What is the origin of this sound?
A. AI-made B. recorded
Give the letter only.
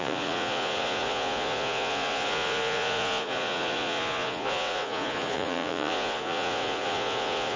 A